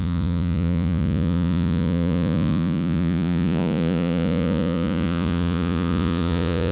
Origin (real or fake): fake